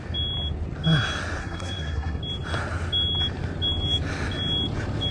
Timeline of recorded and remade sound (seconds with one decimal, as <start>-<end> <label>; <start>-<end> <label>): 0.0-1.4 recorded; 1.4-2.2 remade; 2.2-5.1 recorded